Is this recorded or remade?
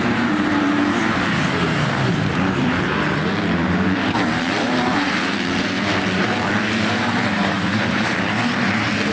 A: remade